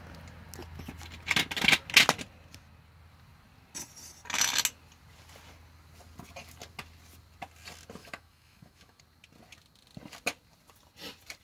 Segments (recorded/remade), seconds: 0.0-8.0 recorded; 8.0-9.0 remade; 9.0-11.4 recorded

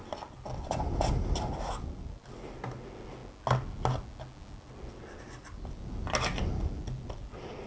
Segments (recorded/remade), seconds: 0.0-7.7 recorded

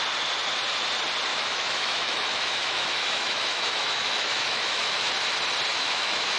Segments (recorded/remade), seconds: 0.0-1.3 recorded; 1.3-5.1 remade; 5.1-5.7 recorded; 5.7-6.4 remade

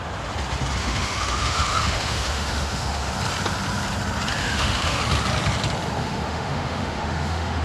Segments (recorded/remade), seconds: 0.0-0.8 recorded; 0.8-3.1 remade; 3.1-4.4 recorded; 4.4-5.0 remade; 5.0-6.0 recorded; 6.0-7.6 remade

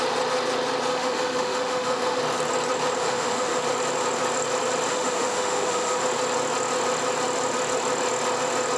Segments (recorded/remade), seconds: 0.0-0.9 recorded; 0.9-2.2 remade; 2.2-3.0 recorded; 3.0-3.6 remade; 3.6-4.9 recorded; 4.9-6.0 remade; 6.0-8.8 recorded

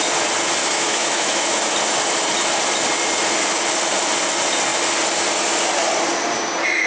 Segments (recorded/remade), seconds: 0.0-0.6 recorded; 0.6-1.7 remade; 1.7-6.9 recorded

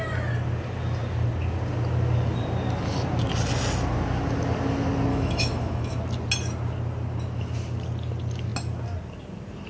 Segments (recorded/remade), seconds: 0.0-5.1 recorded; 5.1-6.0 remade; 6.0-9.7 recorded